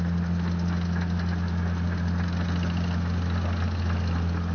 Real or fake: real